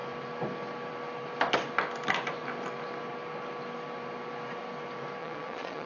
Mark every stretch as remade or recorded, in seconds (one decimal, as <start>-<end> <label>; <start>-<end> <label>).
0.0-5.2 recorded; 5.2-5.9 remade